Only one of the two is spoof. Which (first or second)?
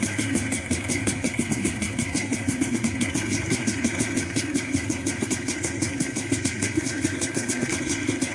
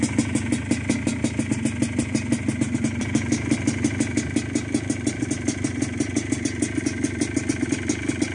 first